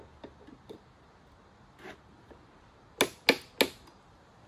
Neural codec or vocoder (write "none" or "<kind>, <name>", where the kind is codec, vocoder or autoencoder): none